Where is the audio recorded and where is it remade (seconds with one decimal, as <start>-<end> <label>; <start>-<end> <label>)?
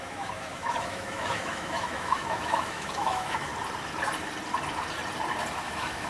0.0-3.5 remade; 3.5-5.6 recorded; 5.6-6.1 remade